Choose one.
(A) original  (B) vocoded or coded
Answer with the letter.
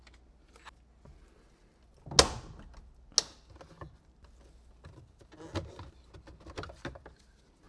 A